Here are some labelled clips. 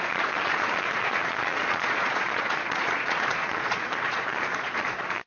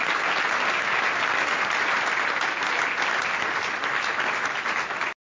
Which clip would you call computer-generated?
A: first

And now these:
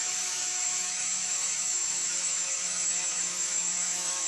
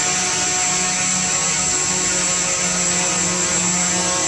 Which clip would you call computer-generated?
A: first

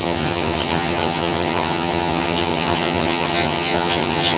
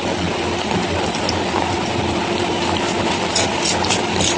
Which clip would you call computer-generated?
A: first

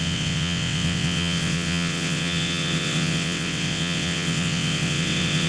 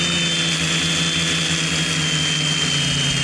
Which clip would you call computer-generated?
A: first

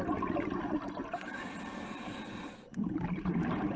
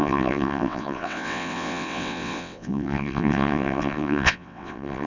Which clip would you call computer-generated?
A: second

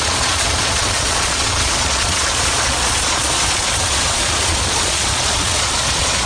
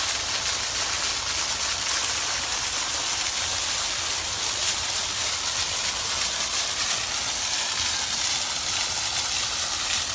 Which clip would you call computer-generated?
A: first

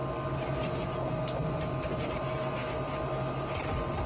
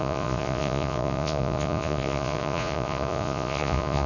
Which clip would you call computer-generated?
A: second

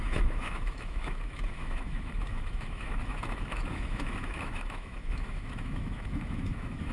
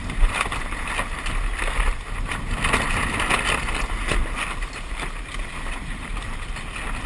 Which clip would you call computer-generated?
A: first